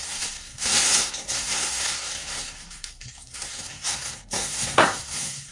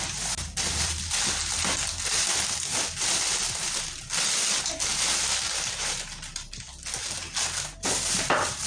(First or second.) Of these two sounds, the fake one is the first